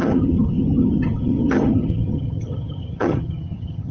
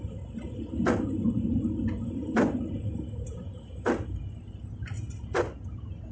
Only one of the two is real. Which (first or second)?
second